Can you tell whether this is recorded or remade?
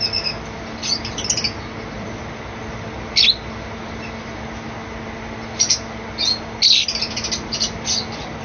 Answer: recorded